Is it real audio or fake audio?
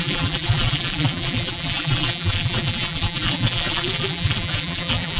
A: fake